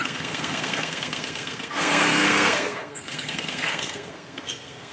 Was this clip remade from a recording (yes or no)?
yes